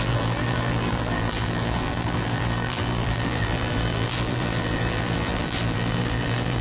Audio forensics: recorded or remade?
remade